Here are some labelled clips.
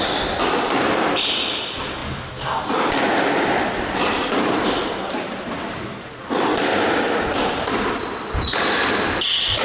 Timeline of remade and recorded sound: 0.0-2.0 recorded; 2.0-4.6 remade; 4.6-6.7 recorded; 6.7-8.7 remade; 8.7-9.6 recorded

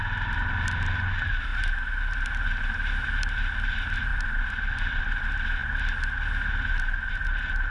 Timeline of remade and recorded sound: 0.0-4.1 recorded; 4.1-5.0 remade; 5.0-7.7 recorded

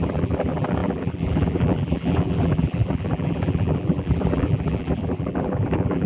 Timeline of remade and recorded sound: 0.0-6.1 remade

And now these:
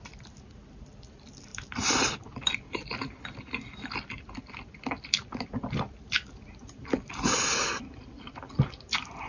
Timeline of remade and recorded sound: 0.0-9.3 recorded

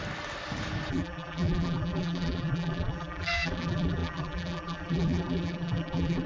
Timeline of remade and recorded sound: 0.0-0.9 recorded; 0.9-6.3 remade